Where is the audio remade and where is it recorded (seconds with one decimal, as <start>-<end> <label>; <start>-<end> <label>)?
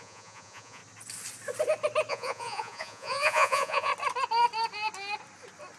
0.0-0.8 remade; 0.8-2.1 recorded; 2.1-3.9 remade; 3.9-5.8 recorded